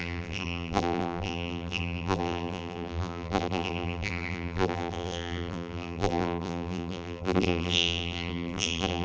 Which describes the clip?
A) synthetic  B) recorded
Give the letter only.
A